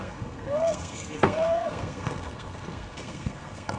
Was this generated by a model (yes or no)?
yes